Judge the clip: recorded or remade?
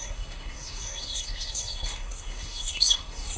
remade